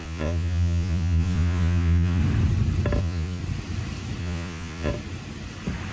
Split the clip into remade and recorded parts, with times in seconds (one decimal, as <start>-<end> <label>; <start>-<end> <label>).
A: 0.0-2.2 remade; 2.2-3.0 recorded; 3.0-3.4 remade; 3.4-4.2 recorded; 4.2-4.9 remade; 4.9-5.9 recorded